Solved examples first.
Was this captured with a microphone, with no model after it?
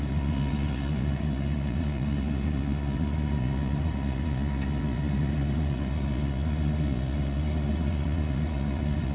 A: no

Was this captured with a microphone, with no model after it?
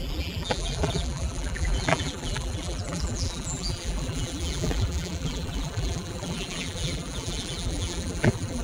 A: no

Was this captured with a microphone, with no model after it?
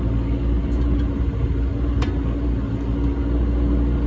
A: yes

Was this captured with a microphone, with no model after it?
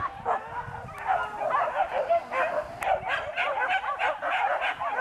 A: yes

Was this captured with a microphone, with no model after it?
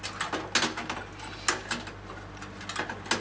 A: yes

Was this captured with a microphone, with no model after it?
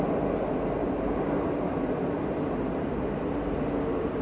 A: yes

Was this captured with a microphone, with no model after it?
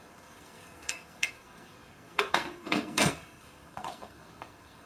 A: no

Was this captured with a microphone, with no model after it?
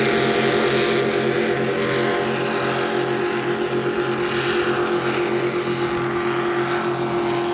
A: yes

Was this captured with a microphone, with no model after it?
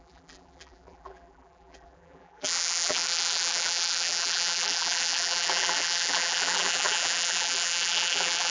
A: no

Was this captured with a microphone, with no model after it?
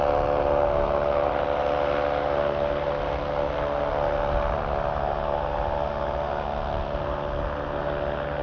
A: yes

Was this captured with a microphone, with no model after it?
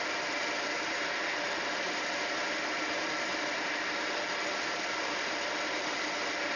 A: yes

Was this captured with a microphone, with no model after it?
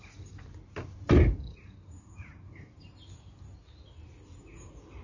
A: yes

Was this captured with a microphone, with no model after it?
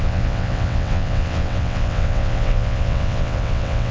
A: no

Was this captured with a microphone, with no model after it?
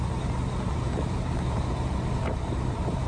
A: yes